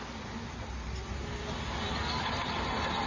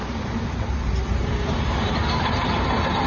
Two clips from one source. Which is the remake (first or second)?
second